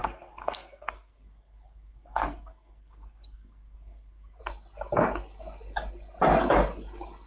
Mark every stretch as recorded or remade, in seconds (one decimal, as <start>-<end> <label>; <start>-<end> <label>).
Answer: 0.0-4.4 remade; 4.4-7.3 recorded

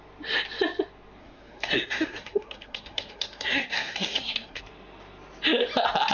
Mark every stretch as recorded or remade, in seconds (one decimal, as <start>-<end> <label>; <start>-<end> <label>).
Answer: 0.0-1.2 recorded; 1.2-4.6 remade; 4.6-6.1 recorded

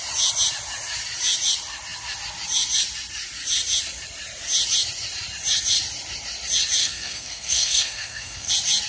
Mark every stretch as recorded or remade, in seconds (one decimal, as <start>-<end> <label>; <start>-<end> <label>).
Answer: 0.0-6.8 recorded; 6.8-8.5 remade; 8.5-8.9 recorded

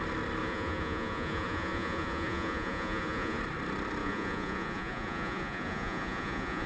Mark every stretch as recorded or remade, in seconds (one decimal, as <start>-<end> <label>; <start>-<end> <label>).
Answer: 0.0-0.4 recorded; 0.4-3.4 remade; 3.4-4.0 recorded; 4.0-6.7 remade